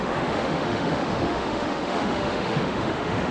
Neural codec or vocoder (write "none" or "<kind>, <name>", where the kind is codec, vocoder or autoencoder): autoencoder, DAC-VAE